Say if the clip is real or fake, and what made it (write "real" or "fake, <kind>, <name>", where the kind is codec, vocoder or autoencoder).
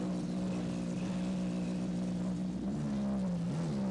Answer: real